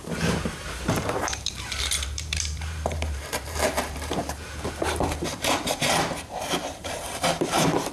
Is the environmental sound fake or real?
fake